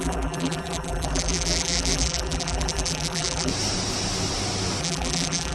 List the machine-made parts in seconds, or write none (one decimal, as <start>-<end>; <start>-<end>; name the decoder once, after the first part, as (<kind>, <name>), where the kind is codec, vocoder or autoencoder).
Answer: 0.0-3.5 (vocoder, BigVGAN v2); 4.8-5.5